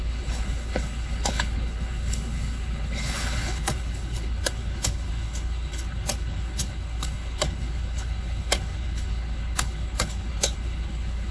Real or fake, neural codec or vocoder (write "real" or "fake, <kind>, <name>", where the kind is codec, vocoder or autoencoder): fake, codec, HILCodec